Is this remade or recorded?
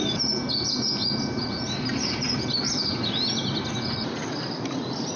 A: recorded